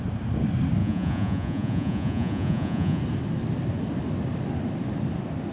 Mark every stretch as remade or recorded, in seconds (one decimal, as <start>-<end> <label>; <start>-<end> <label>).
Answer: 0.0-0.8 recorded; 0.8-3.0 remade; 3.0-5.5 recorded